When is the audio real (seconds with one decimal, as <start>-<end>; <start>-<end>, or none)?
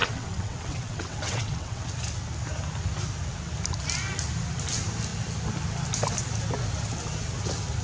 1.8-7.8